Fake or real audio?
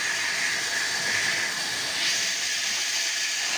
real